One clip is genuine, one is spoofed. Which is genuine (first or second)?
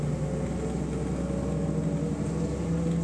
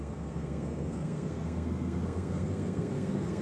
first